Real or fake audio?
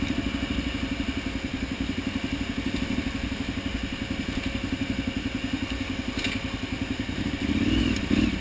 real